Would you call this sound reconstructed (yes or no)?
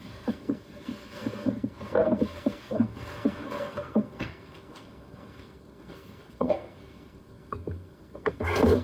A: yes